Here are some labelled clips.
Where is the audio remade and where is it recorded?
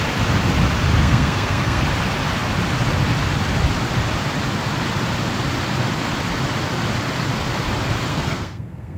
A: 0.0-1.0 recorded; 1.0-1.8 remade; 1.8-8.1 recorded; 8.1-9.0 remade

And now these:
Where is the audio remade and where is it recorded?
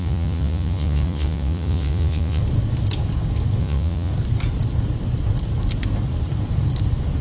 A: 0.0-2.4 remade; 2.4-3.6 recorded; 3.6-4.1 remade; 4.1-7.2 recorded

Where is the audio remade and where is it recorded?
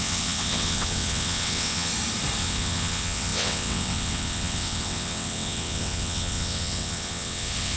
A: 0.0-1.9 remade; 1.9-2.4 recorded; 2.4-7.8 remade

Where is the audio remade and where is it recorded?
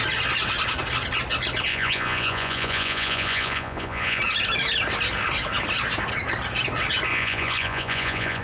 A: 0.0-1.7 recorded; 1.7-4.2 remade; 4.2-7.1 recorded; 7.1-8.4 remade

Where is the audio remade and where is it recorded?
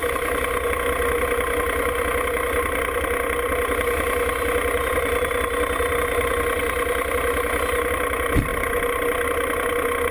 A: 0.0-4.9 recorded; 4.9-6.6 remade; 6.6-7.9 recorded; 7.9-8.5 remade; 8.5-10.1 recorded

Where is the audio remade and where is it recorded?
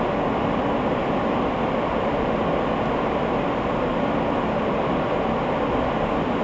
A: 0.0-6.4 recorded